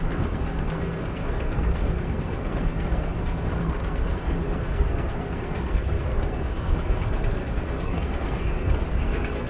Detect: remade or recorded remade